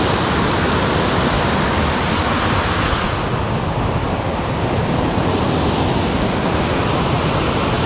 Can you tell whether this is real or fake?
real